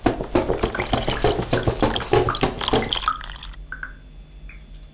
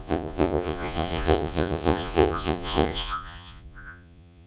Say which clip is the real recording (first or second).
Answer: first